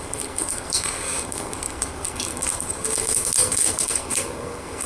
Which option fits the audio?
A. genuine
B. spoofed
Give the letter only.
B